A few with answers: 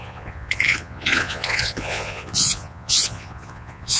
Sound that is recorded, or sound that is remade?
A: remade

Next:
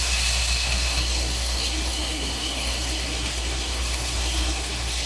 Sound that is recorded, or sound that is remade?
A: remade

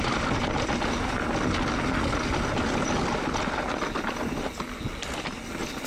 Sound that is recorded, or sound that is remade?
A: recorded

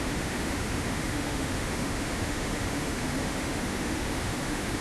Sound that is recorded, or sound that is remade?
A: remade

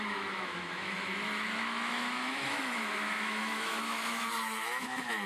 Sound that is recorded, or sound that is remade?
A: remade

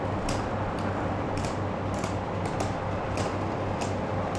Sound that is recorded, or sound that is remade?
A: recorded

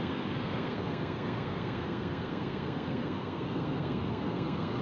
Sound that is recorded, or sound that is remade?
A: remade